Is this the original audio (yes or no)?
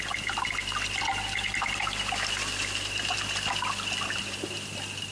yes